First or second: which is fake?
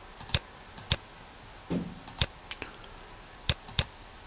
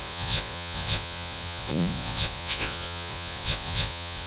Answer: second